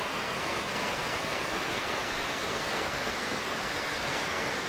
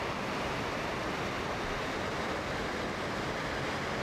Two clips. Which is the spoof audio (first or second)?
first